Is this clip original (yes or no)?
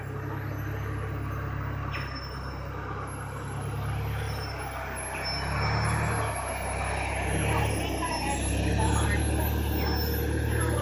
yes